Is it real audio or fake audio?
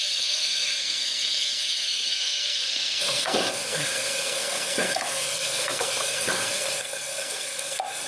fake